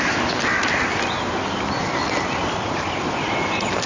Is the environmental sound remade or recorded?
recorded